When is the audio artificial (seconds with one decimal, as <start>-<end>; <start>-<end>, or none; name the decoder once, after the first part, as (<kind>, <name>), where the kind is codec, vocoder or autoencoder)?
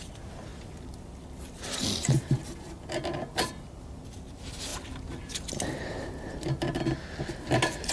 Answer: none